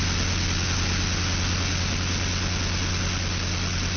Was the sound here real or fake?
real